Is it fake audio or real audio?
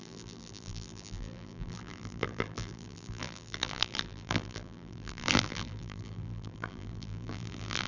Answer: fake